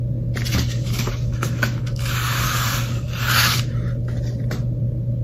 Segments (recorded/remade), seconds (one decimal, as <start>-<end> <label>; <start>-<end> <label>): 0.0-0.5 recorded; 0.5-3.6 remade; 3.6-5.2 recorded